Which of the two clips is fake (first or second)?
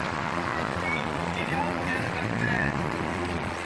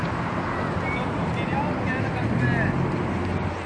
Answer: first